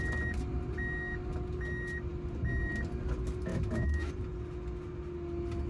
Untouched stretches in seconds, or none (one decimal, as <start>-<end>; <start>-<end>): 0.0-3.5; 4.1-5.7